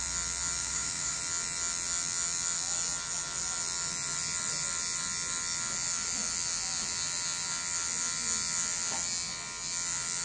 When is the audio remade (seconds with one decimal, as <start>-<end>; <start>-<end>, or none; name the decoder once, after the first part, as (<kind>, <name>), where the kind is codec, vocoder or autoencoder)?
0.6-1.2 (autoencoder, DAC-VAE)